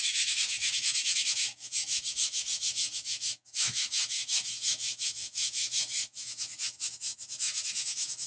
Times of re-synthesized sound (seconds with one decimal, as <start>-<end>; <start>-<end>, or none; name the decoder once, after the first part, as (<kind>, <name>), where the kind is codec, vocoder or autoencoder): 0.0-8.3 (autoencoder, DAC-VAE)